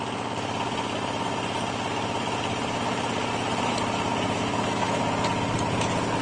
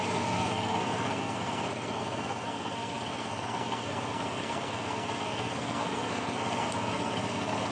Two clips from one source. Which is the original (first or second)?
first